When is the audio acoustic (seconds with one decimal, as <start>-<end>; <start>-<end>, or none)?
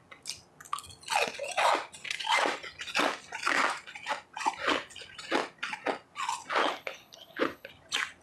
0.0-6.6; 7.7-8.2